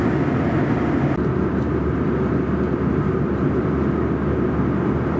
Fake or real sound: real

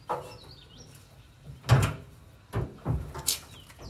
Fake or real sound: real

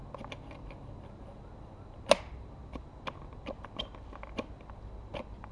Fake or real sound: real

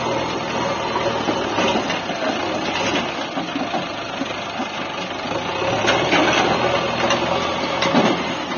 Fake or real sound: real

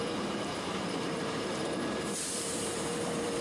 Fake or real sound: fake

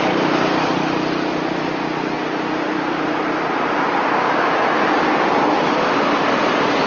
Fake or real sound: real